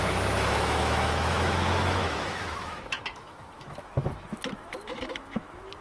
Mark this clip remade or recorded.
remade